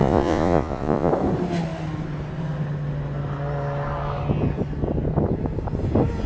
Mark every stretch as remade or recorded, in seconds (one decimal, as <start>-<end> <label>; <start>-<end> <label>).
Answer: 0.0-1.1 remade; 1.1-6.3 recorded

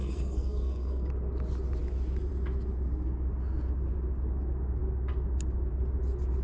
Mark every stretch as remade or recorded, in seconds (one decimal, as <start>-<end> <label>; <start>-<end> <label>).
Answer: 0.0-1.1 remade; 1.1-6.4 recorded

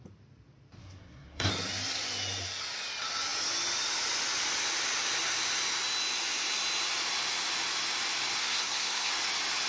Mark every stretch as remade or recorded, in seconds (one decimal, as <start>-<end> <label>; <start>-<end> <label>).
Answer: 0.0-0.8 recorded; 0.8-1.5 remade; 1.5-8.4 recorded; 8.4-9.1 remade; 9.1-9.7 recorded

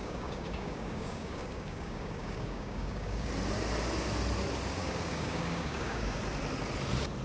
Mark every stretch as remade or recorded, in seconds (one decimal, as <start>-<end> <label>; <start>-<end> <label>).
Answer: 0.0-3.3 remade; 3.3-4.8 recorded; 4.8-6.2 remade; 6.2-7.2 recorded

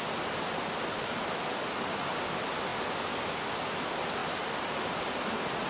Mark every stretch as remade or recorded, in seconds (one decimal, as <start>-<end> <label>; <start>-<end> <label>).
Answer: 0.0-5.7 recorded